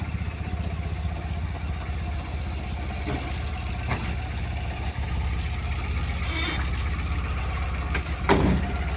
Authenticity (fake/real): real